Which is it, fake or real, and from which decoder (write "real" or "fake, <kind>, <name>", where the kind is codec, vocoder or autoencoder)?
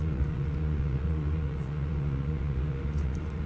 fake, vocoder, Vocos